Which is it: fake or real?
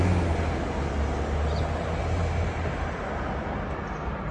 real